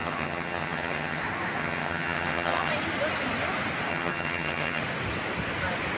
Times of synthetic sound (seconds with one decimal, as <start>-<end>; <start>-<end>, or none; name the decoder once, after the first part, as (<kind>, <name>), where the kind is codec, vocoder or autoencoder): 0.0-1.2 (vocoder, HiFi-GAN); 1.6-2.7; 3.9-4.8

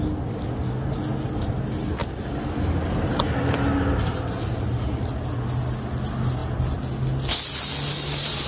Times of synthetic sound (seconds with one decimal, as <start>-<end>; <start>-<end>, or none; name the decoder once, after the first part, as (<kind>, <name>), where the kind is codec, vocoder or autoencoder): none

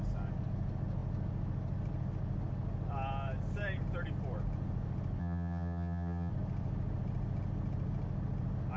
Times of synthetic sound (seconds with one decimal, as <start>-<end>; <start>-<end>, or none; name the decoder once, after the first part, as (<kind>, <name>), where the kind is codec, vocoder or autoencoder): 5.2-6.3 (vocoder, HiFi-GAN)

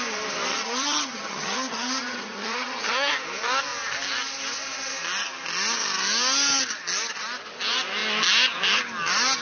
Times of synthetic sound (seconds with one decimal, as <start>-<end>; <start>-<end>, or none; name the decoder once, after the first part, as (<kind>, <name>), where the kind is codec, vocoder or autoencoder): 0.5-3.1 (vocoder, HiFi-GAN)

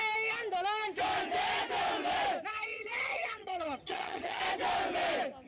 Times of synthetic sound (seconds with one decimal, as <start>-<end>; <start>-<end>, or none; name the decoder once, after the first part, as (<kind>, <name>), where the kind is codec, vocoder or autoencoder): 2.5-4.4 (vocoder, HiFi-GAN)